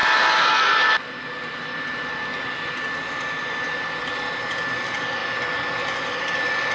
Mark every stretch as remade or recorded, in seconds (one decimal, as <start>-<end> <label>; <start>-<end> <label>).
0.0-6.7 recorded